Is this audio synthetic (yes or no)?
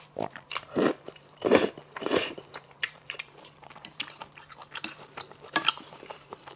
yes